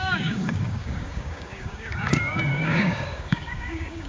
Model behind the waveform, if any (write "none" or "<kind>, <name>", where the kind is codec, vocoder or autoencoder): codec, DAC